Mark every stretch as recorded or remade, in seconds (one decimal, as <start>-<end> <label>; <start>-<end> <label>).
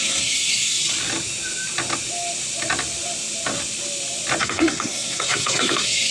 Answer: 0.0-0.8 remade; 0.8-4.4 recorded; 4.4-6.1 remade